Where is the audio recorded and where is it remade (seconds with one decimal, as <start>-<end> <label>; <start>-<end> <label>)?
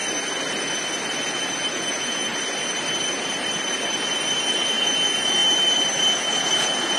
0.0-1.2 recorded; 1.2-2.3 remade; 2.3-4.5 recorded; 4.5-5.4 remade; 5.4-6.3 recorded; 6.3-7.0 remade